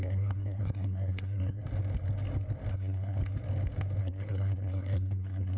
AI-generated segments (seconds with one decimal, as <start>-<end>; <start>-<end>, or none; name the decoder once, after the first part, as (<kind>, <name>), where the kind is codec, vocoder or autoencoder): 0.0-1.6 (codec, SNAC); 2.7-3.2; 4.0-5.6